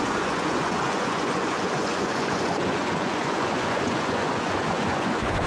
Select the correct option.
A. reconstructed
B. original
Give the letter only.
A